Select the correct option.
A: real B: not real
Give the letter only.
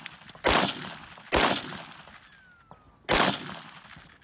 A